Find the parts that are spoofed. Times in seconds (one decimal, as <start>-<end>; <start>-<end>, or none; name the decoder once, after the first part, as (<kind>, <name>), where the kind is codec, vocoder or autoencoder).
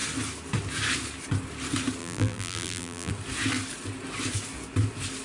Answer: 2.0-3.1 (vocoder, BigVGAN v2)